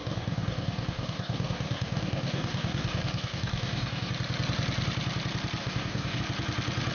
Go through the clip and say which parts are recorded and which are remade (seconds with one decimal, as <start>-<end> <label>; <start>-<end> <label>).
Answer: 0.0-4.1 remade; 4.1-5.6 recorded; 5.6-6.2 remade; 6.2-6.9 recorded